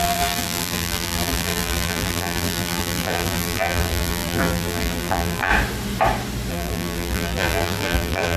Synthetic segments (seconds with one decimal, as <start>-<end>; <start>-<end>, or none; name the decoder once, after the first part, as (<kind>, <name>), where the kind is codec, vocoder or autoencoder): 0.0-5.5 (vocoder, BigVGAN v2); 6.5-8.4